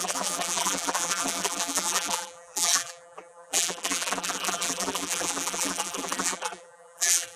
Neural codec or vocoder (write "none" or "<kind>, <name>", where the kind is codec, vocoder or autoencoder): vocoder, BigVGAN v2